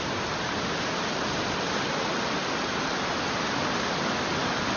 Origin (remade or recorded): recorded